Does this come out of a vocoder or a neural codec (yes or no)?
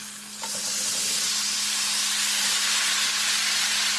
no